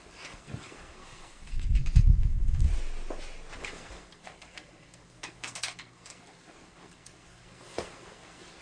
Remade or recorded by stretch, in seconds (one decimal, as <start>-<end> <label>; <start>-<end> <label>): 0.0-2.7 remade; 2.7-3.6 recorded; 3.6-8.6 remade